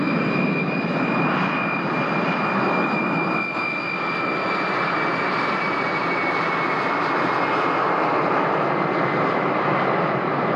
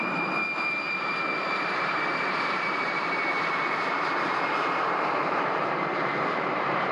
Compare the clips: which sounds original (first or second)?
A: first